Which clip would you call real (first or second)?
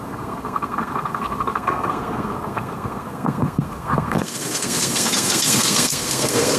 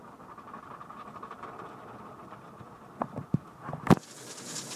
second